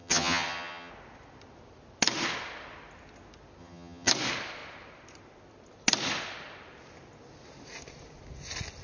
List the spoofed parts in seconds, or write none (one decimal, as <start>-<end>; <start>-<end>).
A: 0.0-0.9; 3.6-4.1